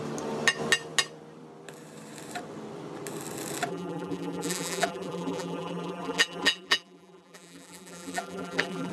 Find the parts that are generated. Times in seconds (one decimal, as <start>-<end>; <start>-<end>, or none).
3.7-8.9